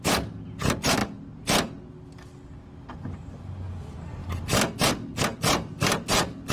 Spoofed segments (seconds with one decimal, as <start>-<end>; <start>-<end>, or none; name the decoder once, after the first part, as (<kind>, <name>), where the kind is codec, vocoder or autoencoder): none